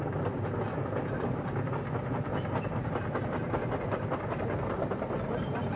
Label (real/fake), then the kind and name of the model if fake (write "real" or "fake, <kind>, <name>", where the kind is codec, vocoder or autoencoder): real